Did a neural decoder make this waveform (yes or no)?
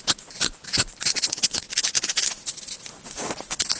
yes